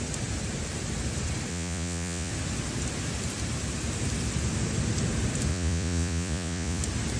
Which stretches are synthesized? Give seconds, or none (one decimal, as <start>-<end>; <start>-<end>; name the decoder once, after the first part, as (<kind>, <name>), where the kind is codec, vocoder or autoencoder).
1.5-2.3 (vocoder, Vocos); 5.5-6.8